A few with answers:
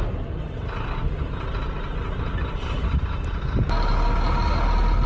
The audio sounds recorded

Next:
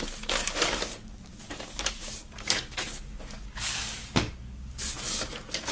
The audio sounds remade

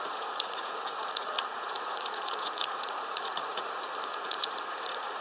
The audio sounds remade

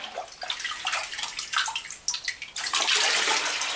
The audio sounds recorded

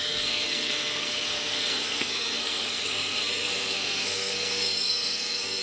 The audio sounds remade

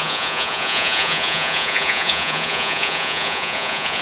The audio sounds remade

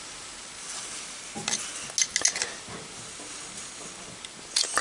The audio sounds recorded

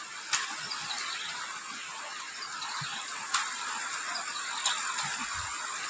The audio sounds recorded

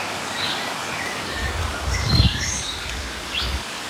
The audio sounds remade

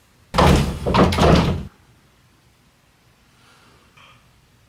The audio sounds recorded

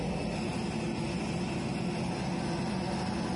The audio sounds recorded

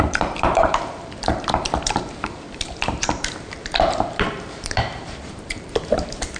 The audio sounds remade